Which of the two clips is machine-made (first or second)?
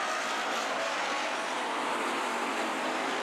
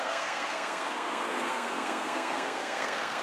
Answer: second